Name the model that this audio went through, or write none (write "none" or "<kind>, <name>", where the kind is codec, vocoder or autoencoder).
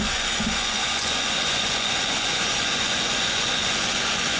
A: vocoder, Vocos